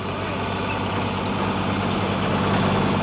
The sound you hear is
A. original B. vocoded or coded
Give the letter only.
A